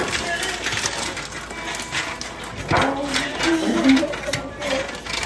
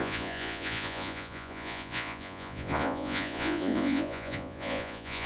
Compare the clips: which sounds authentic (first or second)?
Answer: first